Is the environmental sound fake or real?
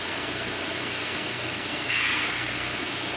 fake